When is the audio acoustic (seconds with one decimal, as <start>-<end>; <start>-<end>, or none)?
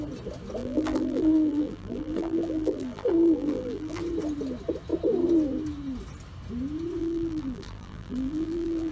0.0-0.6; 4.0-7.0